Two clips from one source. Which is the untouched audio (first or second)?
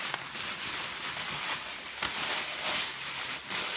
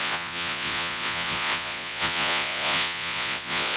first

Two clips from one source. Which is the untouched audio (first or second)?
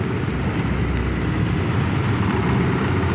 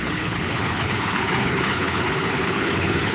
first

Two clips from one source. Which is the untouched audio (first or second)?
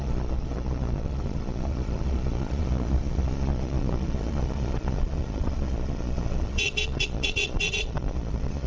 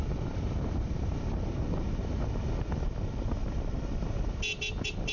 second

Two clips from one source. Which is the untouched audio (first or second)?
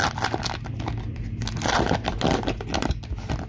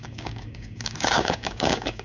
first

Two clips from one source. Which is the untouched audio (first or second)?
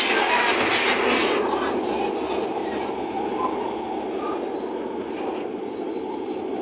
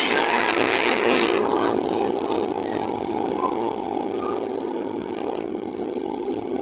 first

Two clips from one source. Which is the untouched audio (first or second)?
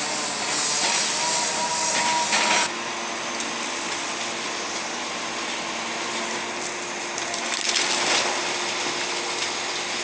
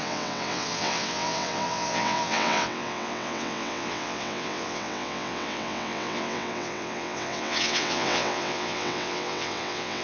first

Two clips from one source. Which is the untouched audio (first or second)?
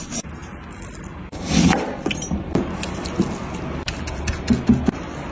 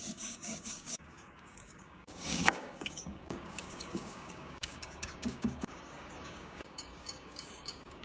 first